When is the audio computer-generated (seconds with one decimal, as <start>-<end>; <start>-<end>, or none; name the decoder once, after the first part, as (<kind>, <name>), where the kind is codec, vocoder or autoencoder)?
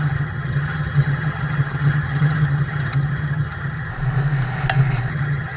0.0-3.9 (vocoder, HiFi-GAN); 5.1-5.6